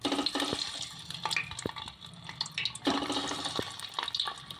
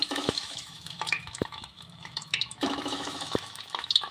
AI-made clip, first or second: second